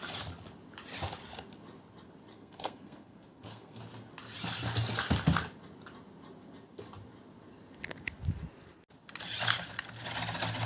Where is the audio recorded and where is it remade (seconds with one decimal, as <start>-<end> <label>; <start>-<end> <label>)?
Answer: 0.0-2.3 recorded; 2.3-3.8 remade; 3.8-10.7 recorded